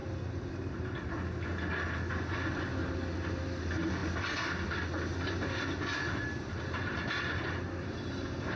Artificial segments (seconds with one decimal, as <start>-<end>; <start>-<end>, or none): none